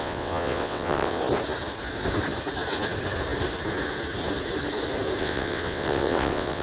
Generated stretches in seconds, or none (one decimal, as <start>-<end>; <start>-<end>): 0.0-1.2; 5.2-6.6